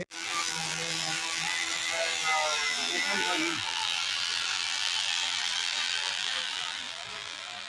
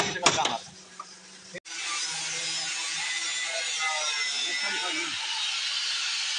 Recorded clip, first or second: second